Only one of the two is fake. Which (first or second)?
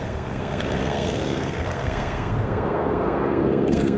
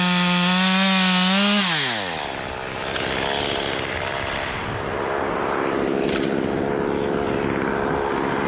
first